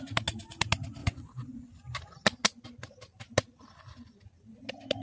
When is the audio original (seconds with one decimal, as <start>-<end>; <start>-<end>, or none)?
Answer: 0.0-1.0; 1.6-5.0